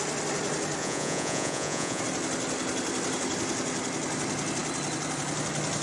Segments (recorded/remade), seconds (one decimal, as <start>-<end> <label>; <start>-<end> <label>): 0.0-0.8 recorded; 0.8-2.0 remade; 2.0-5.8 recorded